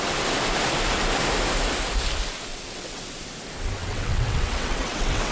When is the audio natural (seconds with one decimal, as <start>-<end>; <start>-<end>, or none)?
0.0-2.5; 3.0-3.8